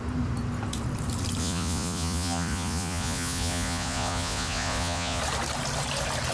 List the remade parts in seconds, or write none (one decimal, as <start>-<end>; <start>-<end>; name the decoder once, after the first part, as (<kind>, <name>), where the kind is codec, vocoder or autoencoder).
1.4-5.2 (vocoder, Vocos)